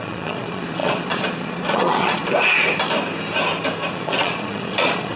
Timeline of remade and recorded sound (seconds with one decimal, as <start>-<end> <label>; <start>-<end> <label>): 0.0-2.2 remade; 2.2-3.9 recorded; 3.9-5.2 remade